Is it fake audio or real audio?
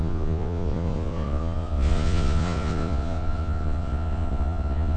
fake